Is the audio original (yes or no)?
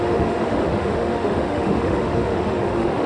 no